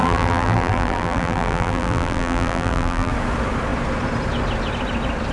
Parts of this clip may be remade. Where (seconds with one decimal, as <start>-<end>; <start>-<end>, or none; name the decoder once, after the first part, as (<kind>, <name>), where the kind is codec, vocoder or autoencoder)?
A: 0.0-3.1 (vocoder, BigVGAN v2)